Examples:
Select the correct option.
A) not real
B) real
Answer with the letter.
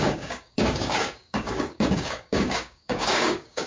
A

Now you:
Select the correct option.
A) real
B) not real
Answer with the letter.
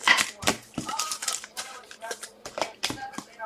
B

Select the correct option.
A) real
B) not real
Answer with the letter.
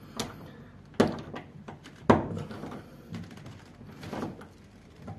A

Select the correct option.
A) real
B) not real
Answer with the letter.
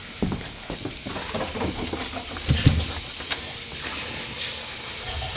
A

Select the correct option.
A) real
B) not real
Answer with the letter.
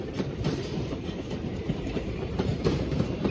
B